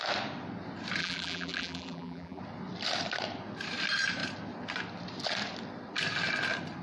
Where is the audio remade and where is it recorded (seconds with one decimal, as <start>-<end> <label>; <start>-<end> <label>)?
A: 0.0-1.0 recorded; 1.0-2.4 remade; 2.4-6.8 recorded